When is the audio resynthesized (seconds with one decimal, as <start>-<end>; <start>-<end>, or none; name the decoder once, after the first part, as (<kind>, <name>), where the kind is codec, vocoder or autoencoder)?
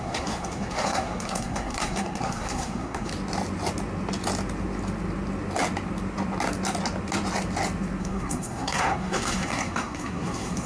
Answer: 0.0-3.1 (codec, SNAC); 8.0-10.7